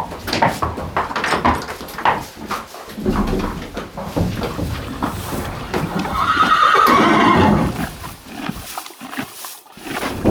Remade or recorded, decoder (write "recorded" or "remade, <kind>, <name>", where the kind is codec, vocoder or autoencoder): recorded